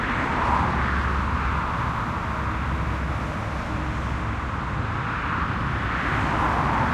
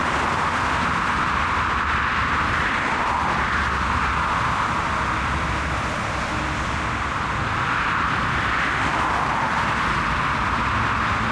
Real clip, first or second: first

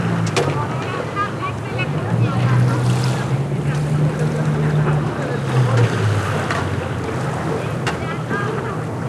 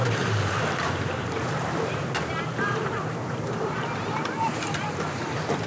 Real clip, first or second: first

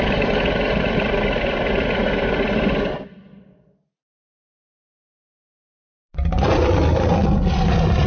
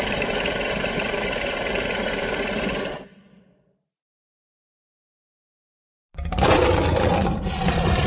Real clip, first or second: first